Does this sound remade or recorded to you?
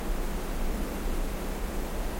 recorded